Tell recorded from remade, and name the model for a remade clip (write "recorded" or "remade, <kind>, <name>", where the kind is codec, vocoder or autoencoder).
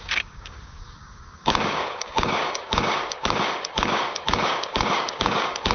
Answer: remade, codec, DAC